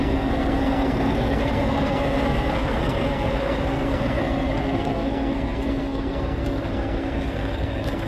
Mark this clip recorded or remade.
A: remade